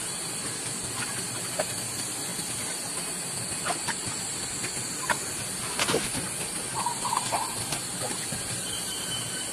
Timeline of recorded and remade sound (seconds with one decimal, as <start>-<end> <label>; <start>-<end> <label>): 0.0-9.5 recorded